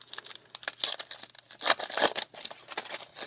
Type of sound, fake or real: real